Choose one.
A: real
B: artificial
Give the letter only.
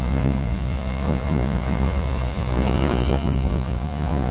B